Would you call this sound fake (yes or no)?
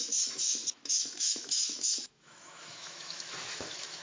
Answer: yes